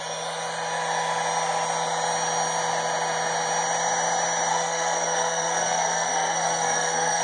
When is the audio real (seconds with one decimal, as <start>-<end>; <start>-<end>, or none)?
0.0-4.5